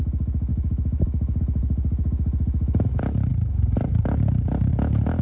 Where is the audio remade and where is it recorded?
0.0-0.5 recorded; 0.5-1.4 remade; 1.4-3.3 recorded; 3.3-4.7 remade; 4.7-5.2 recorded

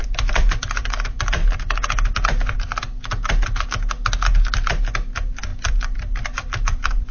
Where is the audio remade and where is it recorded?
0.0-1.4 remade; 1.4-5.1 recorded; 5.1-7.1 remade

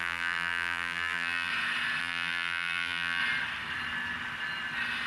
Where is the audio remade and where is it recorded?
0.0-1.5 remade; 1.5-2.0 recorded; 2.0-3.2 remade; 3.2-5.1 recorded

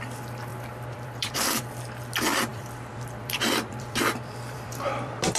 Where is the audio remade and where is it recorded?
0.0-0.5 recorded; 0.5-1.6 remade; 1.6-2.5 recorded; 2.5-5.4 remade

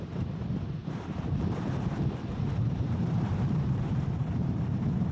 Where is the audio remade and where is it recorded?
0.0-5.1 remade

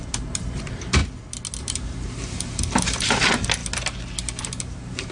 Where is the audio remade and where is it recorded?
0.0-1.0 remade; 1.0-1.6 recorded; 1.6-3.6 remade; 3.6-4.5 recorded; 4.5-5.1 remade